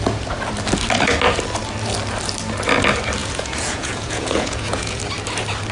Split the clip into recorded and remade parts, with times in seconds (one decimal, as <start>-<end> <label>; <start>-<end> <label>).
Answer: 0.0-3.2 recorded; 3.2-5.0 remade; 5.0-5.7 recorded